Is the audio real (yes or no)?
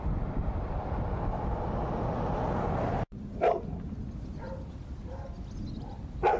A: yes